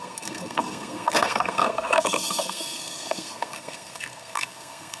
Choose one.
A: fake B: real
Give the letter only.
A